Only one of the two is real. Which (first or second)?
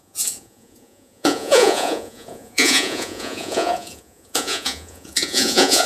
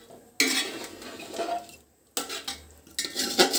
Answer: second